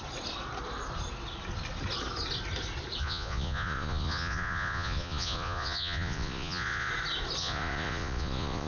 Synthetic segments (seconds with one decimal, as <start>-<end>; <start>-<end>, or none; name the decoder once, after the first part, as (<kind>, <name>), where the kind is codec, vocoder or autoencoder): 3.0-6.9 (vocoder, Vocos); 7.4-8.7